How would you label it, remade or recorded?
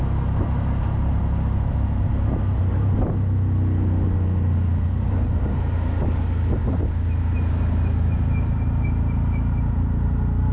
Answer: recorded